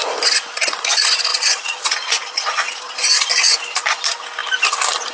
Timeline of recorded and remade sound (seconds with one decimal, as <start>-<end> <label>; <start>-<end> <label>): 0.0-1.3 recorded; 1.3-3.3 remade; 3.3-5.1 recorded